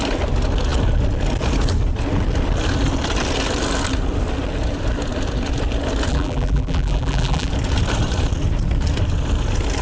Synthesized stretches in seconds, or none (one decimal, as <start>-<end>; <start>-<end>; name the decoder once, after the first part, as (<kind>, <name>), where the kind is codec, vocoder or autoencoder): 6.1-7.5 (vocoder, BigVGAN v2)